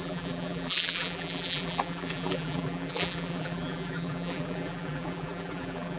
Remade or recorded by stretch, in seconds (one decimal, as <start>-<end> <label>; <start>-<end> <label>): 0.0-6.0 remade